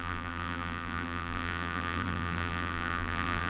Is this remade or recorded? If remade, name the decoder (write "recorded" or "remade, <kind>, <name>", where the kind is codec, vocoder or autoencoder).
remade, vocoder, BigVGAN v2